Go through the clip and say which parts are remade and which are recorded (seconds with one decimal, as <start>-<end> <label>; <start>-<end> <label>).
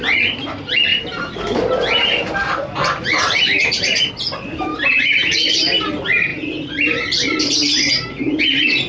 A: 0.0-0.9 recorded; 0.9-4.1 remade; 4.1-4.7 recorded; 4.7-5.5 remade; 5.5-6.3 recorded; 6.3-8.4 remade; 8.4-8.9 recorded